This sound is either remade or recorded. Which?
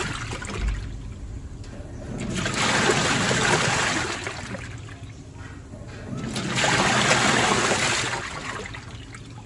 recorded